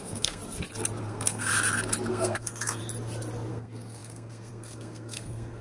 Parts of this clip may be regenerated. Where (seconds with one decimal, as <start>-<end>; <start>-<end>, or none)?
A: 0.0-0.4; 1.0-1.5; 2.1-2.8; 3.5-5.6